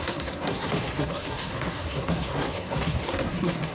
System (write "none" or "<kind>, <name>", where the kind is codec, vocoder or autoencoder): codec, SNAC